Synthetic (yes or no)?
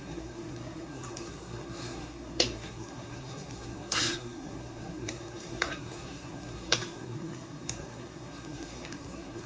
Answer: yes